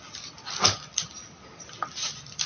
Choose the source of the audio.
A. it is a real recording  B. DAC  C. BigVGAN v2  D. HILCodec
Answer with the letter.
A